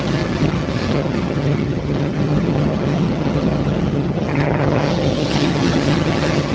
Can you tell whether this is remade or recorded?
remade